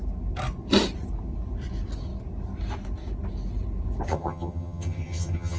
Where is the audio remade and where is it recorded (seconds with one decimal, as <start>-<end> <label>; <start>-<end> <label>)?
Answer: 0.0-4.1 recorded; 4.1-5.6 remade

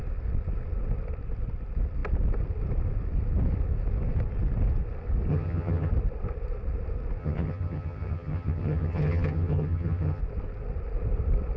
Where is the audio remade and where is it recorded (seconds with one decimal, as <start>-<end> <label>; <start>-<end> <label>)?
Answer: 0.0-5.3 recorded; 5.3-5.9 remade; 5.9-7.2 recorded; 7.2-10.2 remade; 10.2-11.6 recorded

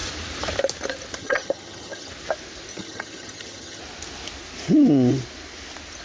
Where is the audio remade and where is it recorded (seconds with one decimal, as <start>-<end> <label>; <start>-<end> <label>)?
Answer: 0.0-1.2 recorded; 1.2-2.1 remade; 2.1-2.7 recorded; 2.7-3.8 remade; 3.8-6.0 recorded

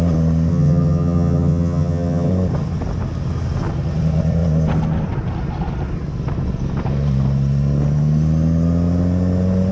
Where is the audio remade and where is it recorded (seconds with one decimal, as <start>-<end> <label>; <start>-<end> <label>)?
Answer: 0.0-0.5 recorded; 0.5-2.3 remade; 2.3-9.7 recorded

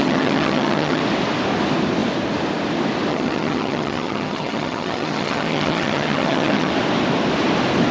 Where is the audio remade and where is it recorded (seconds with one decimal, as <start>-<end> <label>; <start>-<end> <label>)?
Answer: 0.0-1.0 remade; 1.0-3.1 recorded; 3.1-6.7 remade; 6.7-7.9 recorded

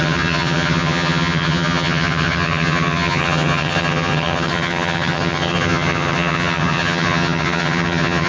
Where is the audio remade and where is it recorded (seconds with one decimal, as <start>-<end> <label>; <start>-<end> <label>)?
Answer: 0.0-8.3 remade

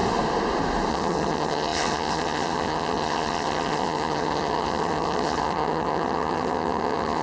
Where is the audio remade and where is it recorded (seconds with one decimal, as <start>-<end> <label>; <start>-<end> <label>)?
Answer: 0.0-0.9 recorded; 0.9-7.2 remade